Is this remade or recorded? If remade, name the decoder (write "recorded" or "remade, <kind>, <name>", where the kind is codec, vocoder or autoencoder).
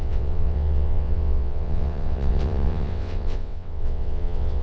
remade, vocoder, WaveNeXt